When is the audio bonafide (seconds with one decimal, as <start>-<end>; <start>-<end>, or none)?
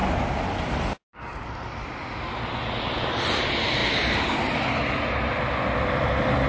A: 0.0-0.7; 1.3-2.8; 3.8-5.6